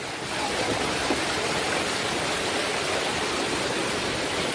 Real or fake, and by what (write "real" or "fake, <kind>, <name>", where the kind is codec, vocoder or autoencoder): real